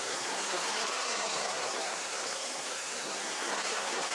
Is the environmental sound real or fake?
fake